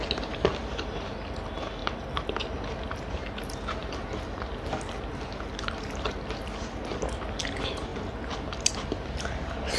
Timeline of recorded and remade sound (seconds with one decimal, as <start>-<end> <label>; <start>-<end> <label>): 0.0-9.8 recorded